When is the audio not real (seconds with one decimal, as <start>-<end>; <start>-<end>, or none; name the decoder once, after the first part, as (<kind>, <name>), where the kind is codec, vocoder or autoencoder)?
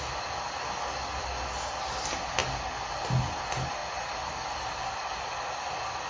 0.0-2.4 (vocoder, BigVGAN v2); 3.0-3.8; 4.4-6.1